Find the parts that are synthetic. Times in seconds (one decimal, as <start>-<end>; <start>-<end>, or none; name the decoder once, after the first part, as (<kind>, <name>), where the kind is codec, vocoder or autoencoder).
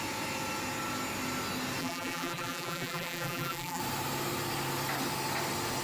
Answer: 1.8-3.8 (vocoder, BigVGAN v2)